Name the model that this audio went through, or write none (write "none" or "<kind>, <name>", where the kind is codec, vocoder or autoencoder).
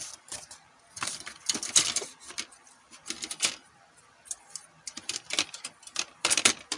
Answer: vocoder, BigVGAN v2